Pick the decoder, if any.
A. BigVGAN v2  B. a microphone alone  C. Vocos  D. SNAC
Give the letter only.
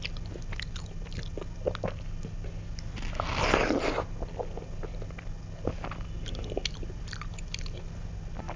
B